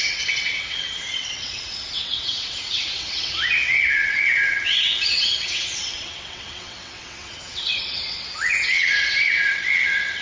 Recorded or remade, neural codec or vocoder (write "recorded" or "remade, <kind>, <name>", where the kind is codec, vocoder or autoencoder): remade, vocoder, WaveNeXt